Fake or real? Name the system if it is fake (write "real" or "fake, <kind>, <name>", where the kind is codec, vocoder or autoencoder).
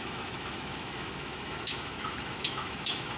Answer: fake, autoencoder, DAC-VAE